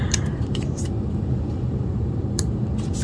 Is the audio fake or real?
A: fake